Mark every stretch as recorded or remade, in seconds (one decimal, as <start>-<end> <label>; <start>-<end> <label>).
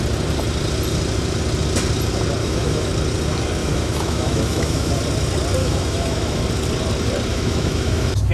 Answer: 0.0-2.4 recorded; 2.4-2.9 remade; 2.9-3.6 recorded; 3.6-4.9 remade; 4.9-5.6 recorded; 5.6-6.4 remade; 6.4-7.3 recorded; 7.3-8.3 remade